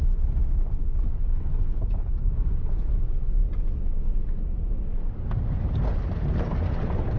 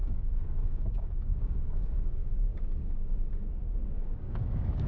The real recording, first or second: first